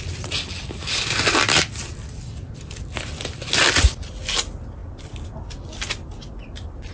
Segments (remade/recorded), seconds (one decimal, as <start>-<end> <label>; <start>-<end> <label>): 0.0-6.9 recorded